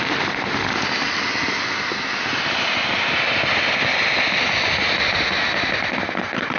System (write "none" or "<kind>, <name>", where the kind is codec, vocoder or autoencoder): none